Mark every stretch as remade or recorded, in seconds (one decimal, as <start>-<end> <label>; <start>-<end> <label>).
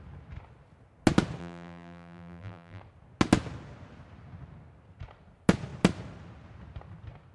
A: 0.0-1.4 recorded; 1.4-2.8 remade; 2.8-7.3 recorded